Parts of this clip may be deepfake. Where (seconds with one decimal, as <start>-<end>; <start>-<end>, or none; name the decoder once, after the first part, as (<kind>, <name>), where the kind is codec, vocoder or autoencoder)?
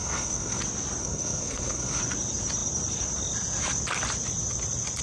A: 0.0-0.6 (codec, SNAC); 1.0-2.0